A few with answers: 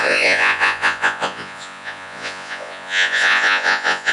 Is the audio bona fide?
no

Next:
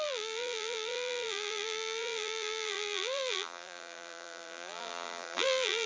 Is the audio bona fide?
no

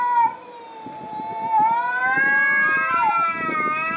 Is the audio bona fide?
yes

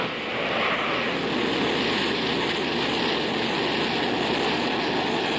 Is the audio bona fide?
yes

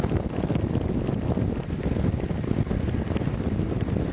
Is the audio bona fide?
yes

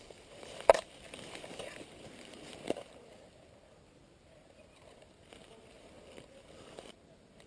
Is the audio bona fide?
no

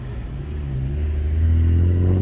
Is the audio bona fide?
yes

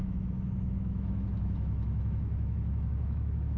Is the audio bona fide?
no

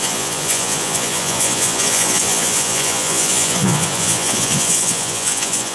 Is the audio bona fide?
no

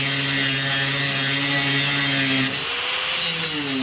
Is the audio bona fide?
yes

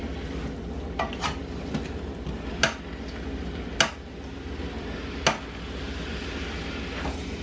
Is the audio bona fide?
yes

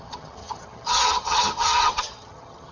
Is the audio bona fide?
no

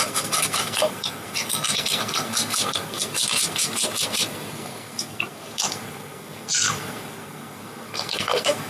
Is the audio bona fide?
no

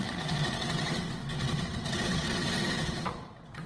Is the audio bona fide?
no